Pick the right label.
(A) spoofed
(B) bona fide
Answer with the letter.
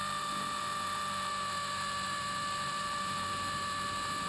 A